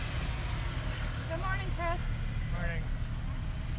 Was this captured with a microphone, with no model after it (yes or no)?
yes